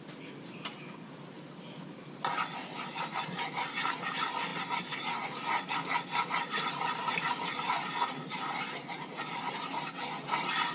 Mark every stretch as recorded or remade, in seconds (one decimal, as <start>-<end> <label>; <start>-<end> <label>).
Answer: 0.0-10.7 recorded